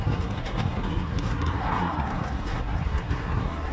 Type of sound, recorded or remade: remade